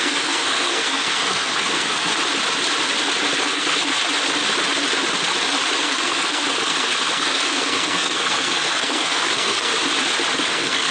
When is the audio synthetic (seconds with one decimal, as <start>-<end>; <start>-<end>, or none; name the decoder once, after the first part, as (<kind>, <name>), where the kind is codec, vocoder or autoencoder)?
0.0-2.1 (codec, SNAC); 3.4-4.0; 5.8-9.7; 10.5-10.9